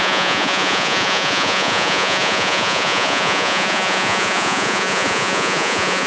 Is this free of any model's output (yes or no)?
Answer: no